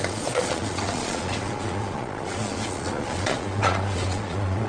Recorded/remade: remade